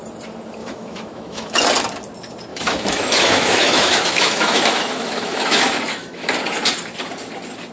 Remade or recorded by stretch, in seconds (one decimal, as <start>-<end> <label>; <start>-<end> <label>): 0.0-0.6 recorded; 0.6-1.6 remade; 1.6-2.5 recorded; 2.5-6.3 remade; 6.3-7.7 recorded